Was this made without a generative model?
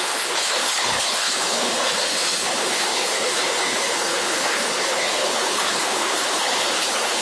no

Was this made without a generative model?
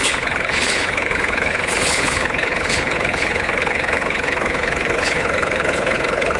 no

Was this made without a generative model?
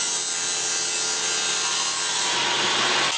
yes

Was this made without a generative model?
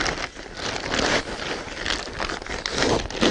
yes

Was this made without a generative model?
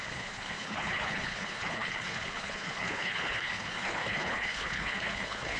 no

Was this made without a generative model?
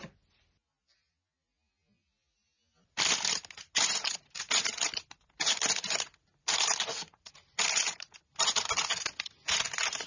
yes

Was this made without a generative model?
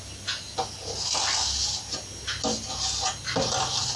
yes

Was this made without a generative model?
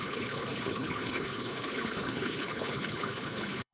no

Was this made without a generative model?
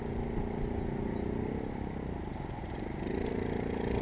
yes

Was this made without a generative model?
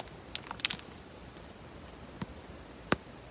yes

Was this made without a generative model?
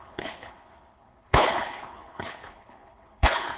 no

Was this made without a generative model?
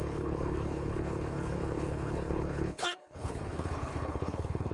no